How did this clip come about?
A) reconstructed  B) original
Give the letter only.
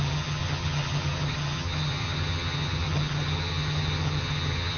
A